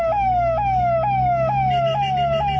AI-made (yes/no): no